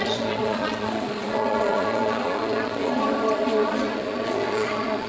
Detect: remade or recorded remade